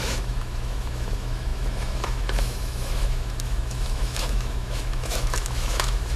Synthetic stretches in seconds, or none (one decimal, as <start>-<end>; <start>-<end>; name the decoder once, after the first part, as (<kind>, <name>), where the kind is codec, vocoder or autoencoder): 0.0-6.2 (autoencoder, DAC-VAE)